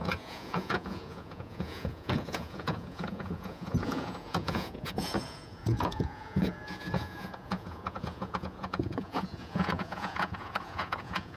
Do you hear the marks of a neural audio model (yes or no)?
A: yes